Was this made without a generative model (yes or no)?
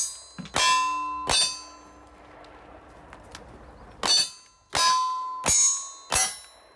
yes